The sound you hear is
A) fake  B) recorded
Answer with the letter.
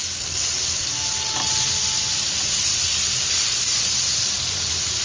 B